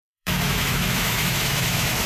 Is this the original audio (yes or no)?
no